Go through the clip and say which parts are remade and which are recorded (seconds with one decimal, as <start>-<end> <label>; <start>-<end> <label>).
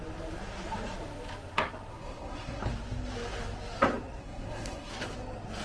0.0-1.9 recorded; 1.9-2.6 remade; 2.6-4.2 recorded; 4.2-4.9 remade; 4.9-5.6 recorded